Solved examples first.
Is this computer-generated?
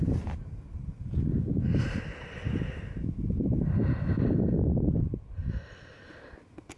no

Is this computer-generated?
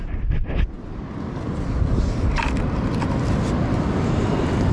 no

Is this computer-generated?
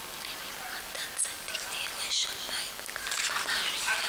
no